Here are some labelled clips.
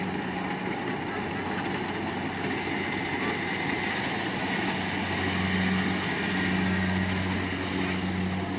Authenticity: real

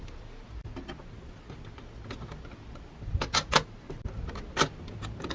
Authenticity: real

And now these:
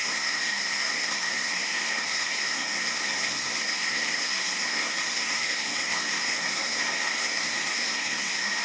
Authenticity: fake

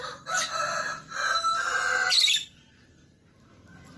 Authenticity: real